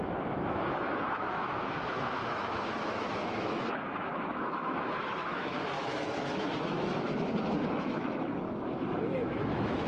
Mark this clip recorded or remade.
remade